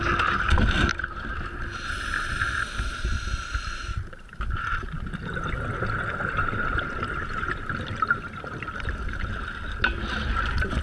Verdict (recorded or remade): recorded